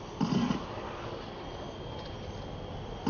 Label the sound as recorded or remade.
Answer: recorded